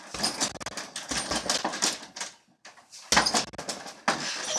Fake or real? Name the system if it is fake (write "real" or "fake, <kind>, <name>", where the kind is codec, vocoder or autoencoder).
real